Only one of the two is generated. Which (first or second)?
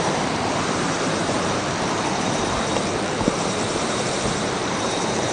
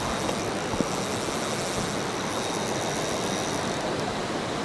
first